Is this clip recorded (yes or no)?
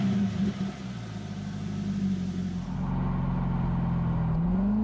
yes